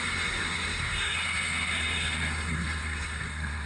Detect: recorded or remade remade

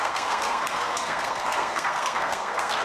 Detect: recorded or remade remade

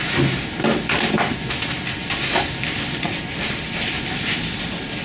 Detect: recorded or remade recorded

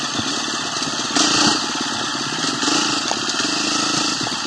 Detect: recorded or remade recorded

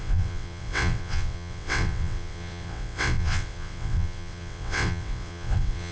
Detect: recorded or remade remade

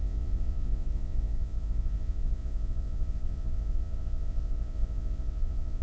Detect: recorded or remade remade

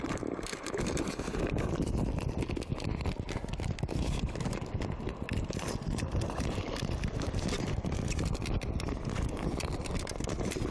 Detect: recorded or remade recorded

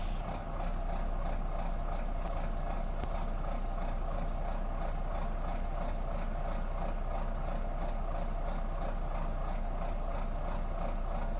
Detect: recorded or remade recorded